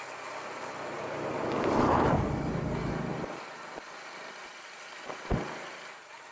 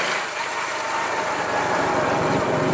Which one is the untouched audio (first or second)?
first